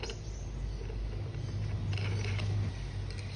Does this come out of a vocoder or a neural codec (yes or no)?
no